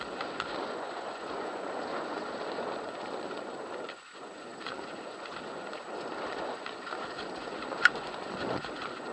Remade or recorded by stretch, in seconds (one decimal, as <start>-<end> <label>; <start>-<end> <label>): 0.0-9.1 remade

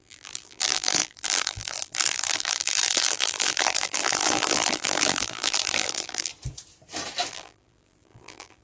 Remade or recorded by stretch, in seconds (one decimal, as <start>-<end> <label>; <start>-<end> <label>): 0.0-6.3 remade; 6.3-7.3 recorded; 7.3-8.6 remade